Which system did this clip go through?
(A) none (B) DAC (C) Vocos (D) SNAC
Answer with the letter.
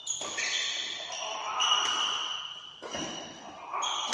A